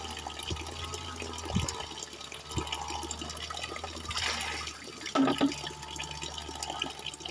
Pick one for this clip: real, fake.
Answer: real